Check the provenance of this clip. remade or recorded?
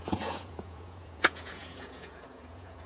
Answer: remade